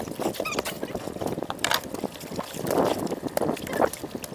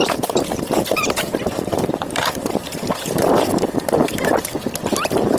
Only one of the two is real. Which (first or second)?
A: first